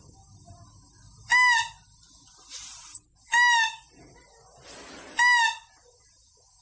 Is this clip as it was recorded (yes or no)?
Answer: yes